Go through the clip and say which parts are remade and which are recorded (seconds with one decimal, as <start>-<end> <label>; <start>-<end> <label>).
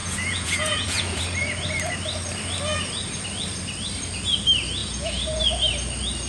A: 0.0-1.2 remade; 1.2-4.8 recorded; 4.8-5.4 remade; 5.4-6.3 recorded